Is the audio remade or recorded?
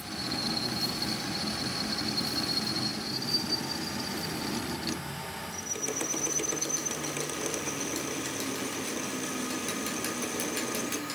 recorded